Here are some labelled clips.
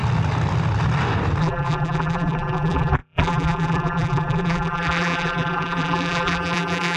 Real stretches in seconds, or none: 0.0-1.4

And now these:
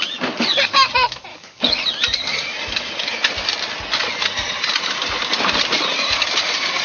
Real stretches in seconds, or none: 0.0-1.3; 1.8-6.8

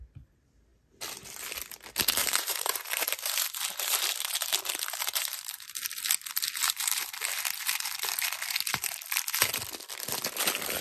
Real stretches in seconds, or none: 0.0-2.2; 5.9-6.6; 7.1-10.8

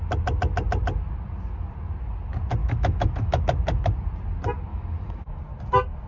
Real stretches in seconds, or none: 0.0-2.6; 3.4-4.7; 5.4-6.1

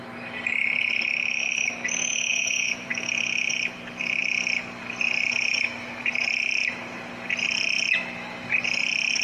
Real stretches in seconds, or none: 0.0-2.3; 2.9-9.2

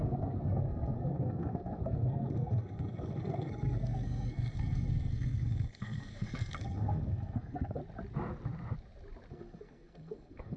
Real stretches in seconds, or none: 7.8-9.3